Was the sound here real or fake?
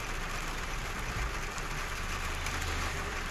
fake